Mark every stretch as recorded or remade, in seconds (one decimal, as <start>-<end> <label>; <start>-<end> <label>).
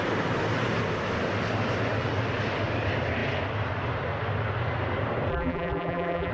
0.0-5.3 recorded; 5.3-6.3 remade